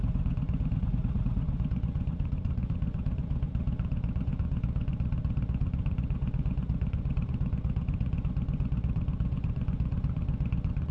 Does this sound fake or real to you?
fake